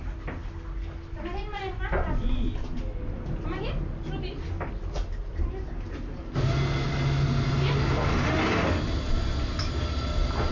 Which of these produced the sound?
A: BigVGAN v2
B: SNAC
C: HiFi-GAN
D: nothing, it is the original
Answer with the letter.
D